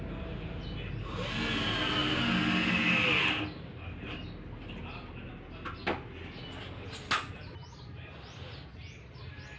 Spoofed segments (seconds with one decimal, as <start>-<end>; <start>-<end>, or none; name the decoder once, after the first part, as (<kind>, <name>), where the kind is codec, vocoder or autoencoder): none